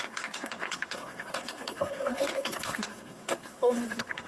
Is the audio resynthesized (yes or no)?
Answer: yes